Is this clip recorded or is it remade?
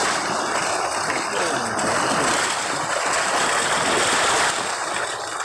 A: recorded